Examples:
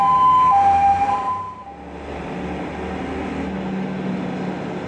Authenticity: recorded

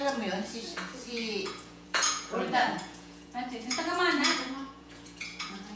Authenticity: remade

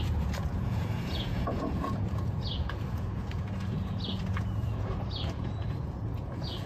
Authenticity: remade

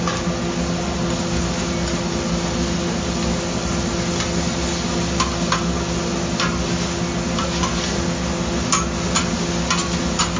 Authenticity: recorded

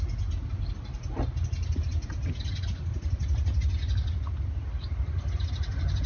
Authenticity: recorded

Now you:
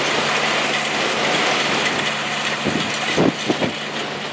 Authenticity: recorded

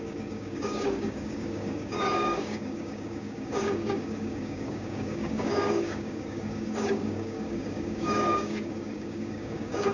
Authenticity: remade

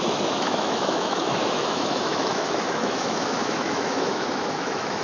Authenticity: remade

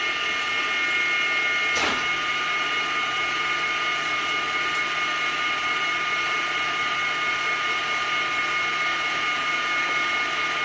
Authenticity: recorded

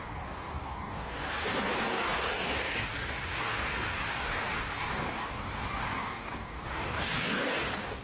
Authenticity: remade